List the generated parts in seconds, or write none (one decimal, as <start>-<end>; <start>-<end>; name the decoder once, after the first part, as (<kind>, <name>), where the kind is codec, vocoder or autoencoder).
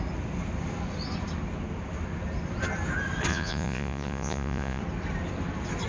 3.3-4.8 (vocoder, Vocos)